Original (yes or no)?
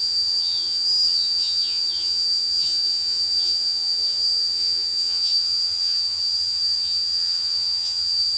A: no